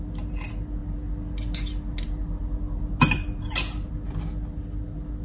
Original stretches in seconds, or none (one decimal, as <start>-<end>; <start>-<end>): 0.0-5.2